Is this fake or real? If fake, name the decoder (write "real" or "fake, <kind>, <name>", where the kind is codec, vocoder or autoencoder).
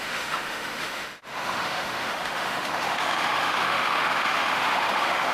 fake, autoencoder, DAC-VAE